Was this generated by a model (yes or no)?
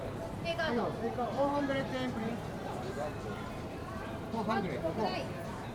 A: yes